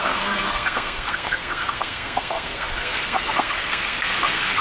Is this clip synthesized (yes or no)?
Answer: yes